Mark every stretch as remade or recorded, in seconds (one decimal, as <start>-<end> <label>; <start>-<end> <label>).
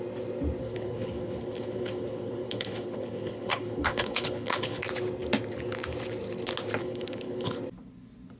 0.0-0.6 recorded; 0.6-4.8 remade; 4.8-6.8 recorded; 6.8-7.6 remade; 7.6-8.4 recorded